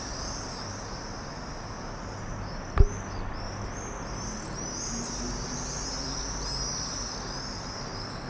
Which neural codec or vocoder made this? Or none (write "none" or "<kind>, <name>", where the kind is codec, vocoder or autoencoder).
none